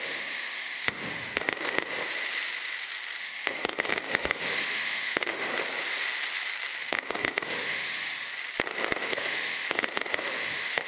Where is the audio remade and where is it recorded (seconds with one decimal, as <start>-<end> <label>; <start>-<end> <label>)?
0.0-2.0 remade; 2.0-3.2 recorded; 3.2-5.5 remade; 5.5-6.8 recorded; 6.8-8.3 remade; 8.3-9.0 recorded; 9.0-10.9 remade